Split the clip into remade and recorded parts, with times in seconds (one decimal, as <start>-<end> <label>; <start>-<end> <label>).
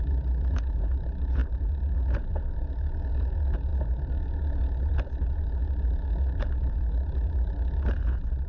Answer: 0.0-8.5 remade